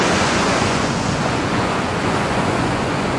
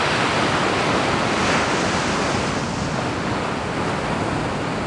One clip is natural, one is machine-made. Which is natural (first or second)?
second